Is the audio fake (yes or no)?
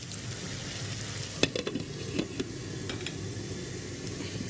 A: no